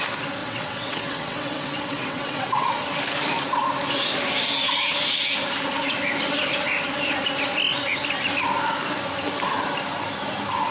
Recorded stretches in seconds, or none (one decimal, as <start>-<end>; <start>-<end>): 0.0-0.4; 2.8-10.7